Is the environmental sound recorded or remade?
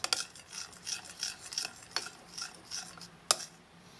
recorded